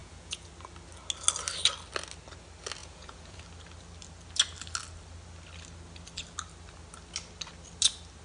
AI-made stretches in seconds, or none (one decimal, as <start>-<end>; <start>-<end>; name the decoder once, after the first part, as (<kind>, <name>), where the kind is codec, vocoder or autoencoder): 0.0-0.5 (vocoder, Vocos); 2.8-3.4